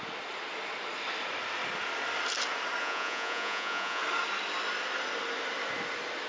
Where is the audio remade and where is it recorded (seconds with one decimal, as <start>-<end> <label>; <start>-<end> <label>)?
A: 0.0-2.8 recorded; 2.8-4.0 remade; 4.0-6.3 recorded

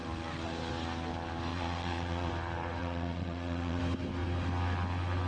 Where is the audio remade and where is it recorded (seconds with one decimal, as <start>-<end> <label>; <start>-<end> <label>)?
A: 0.0-1.5 recorded; 1.5-2.3 remade; 2.3-2.8 recorded; 2.8-3.8 remade; 3.8-5.3 recorded

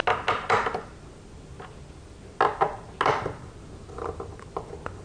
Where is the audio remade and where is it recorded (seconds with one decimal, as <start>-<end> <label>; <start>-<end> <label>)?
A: 0.0-5.0 recorded